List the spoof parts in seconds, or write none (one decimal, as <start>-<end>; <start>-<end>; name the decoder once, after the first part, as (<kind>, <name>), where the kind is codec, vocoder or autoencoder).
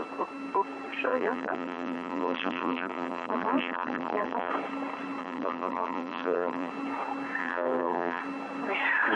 1.1-4.5 (vocoder, BigVGAN v2); 5.2-6.7; 7.4-8.2